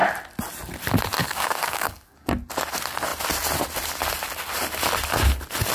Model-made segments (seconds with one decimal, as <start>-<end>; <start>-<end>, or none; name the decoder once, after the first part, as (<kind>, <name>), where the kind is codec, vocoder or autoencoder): 1.2-2.3 (codec, DAC)